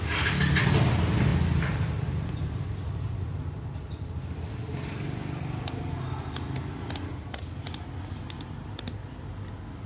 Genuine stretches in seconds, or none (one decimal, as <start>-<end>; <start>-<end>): 0.0-9.9